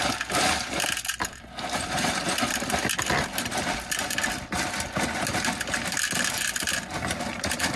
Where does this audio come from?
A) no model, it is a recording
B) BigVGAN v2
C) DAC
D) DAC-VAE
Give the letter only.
A